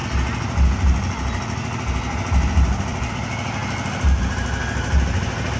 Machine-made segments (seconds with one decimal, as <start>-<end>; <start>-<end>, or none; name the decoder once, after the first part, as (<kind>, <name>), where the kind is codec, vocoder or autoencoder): none